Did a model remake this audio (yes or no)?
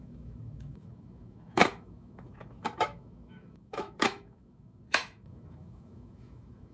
yes